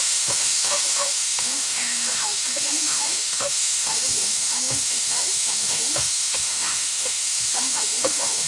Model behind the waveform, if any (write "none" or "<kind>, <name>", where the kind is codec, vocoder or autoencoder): autoencoder, DAC-VAE